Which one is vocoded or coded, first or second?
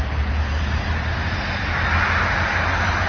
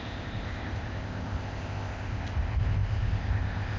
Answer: second